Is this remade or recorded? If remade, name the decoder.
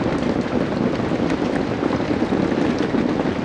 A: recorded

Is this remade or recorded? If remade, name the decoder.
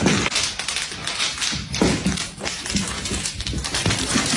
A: recorded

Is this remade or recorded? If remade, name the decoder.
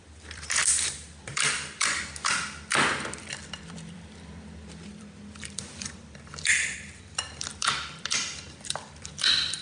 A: remade, vocoder, BigVGAN v2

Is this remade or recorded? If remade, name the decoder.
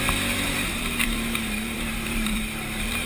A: remade, vocoder, BigVGAN v2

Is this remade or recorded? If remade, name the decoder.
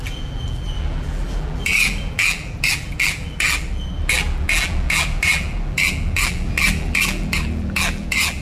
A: remade, vocoder, BigVGAN v2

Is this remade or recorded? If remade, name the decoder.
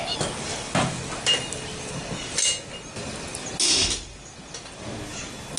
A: recorded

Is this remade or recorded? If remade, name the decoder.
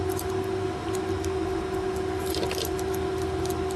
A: recorded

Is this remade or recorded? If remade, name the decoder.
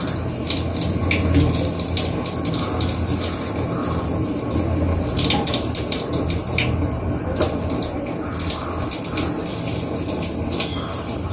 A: recorded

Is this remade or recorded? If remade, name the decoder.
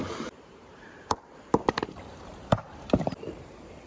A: remade, vocoder, BigVGAN v2